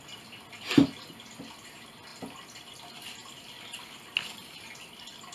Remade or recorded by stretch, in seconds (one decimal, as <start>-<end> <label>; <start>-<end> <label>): 0.0-5.3 recorded